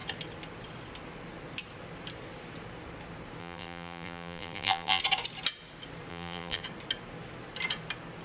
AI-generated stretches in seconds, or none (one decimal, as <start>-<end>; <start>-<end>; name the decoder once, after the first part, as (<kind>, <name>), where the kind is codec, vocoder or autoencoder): 3.4-5.0 (vocoder, BigVGAN v2); 6.1-6.6